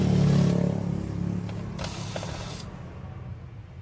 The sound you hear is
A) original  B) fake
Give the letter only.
A